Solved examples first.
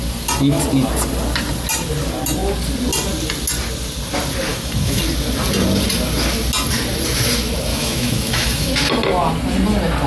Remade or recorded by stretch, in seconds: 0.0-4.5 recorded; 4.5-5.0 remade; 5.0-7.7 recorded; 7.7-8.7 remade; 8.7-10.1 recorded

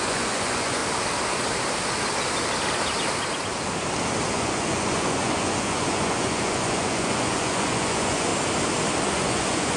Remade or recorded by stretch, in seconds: 0.0-0.8 remade; 0.8-4.3 recorded; 4.3-8.3 remade; 8.3-9.1 recorded; 9.1-9.8 remade

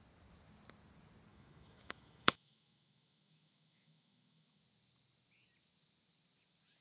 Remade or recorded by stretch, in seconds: 0.0-1.3 recorded; 1.3-4.6 remade; 4.6-6.8 recorded

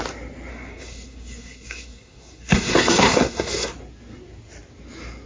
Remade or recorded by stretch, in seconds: 0.0-0.5 recorded; 0.5-3.7 remade; 3.7-5.3 recorded

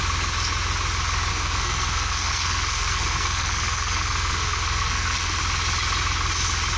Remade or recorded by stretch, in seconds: 0.0-1.3 recorded; 1.3-5.4 remade; 5.4-6.8 recorded

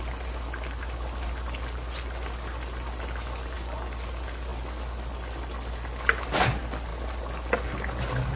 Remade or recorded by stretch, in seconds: 0.0-8.4 recorded